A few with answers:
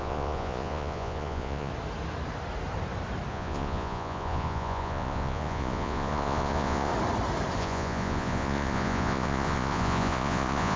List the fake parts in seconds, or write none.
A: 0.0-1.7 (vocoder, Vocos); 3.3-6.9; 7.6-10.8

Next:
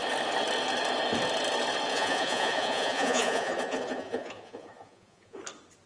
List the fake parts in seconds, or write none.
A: 1.9-5.4 (vocoder, Vocos)